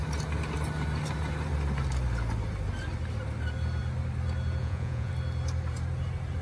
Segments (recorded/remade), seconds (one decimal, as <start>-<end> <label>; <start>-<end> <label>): 0.0-4.6 recorded; 4.6-5.1 remade; 5.1-6.4 recorded